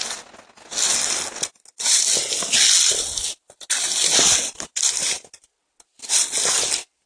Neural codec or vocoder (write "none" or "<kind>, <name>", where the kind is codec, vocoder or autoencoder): none